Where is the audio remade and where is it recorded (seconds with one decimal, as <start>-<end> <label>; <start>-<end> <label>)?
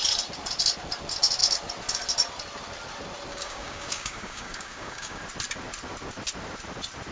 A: 0.0-3.3 recorded; 3.3-5.2 remade; 5.2-7.1 recorded